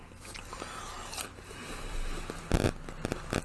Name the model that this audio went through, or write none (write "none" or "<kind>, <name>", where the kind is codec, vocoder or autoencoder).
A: none